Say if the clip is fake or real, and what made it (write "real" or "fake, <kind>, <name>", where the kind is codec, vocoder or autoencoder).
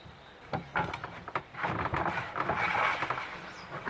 real